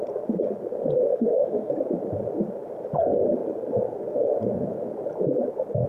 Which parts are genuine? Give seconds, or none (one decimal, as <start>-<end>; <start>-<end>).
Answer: 0.0-1.1; 1.7-5.9